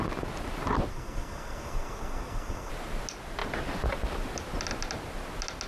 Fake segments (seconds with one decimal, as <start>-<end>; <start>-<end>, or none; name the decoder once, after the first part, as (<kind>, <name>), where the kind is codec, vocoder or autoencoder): 0.9-2.7 (codec, SNAC)